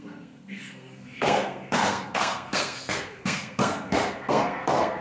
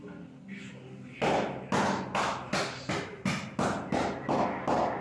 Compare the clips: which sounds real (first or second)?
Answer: second